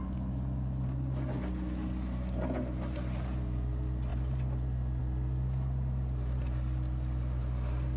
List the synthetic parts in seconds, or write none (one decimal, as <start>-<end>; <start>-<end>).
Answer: none